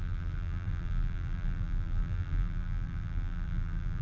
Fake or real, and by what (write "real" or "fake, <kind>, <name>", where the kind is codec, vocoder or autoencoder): fake, vocoder, BigVGAN v2